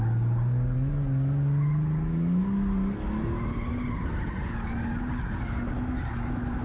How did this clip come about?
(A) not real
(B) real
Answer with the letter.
B